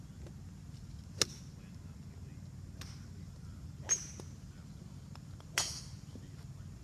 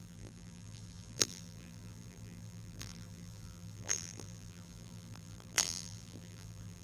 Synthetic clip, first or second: second